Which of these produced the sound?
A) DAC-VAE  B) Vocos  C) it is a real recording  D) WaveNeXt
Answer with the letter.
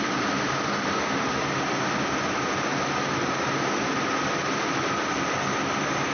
C